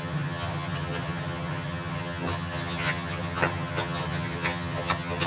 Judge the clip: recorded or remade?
remade